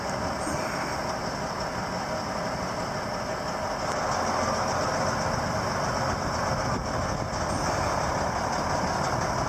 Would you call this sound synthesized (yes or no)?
no